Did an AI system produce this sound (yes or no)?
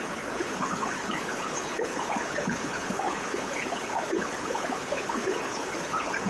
yes